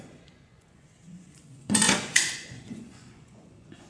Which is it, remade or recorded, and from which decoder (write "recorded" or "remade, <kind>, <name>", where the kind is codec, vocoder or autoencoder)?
remade, vocoder, Vocos